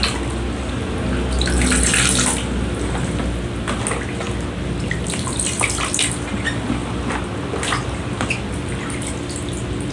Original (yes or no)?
yes